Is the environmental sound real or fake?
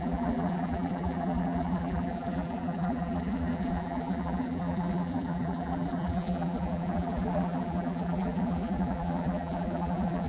fake